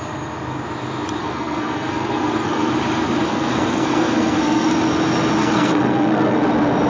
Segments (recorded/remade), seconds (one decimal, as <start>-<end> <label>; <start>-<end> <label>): 0.0-1.2 recorded; 1.2-2.7 remade; 2.7-3.2 recorded; 3.2-4.7 remade; 4.7-5.4 recorded; 5.4-6.4 remade; 6.4-6.9 recorded